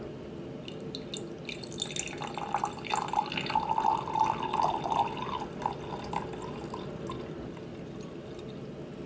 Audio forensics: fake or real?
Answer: real